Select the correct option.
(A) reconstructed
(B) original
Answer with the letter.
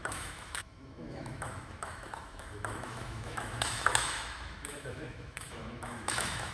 A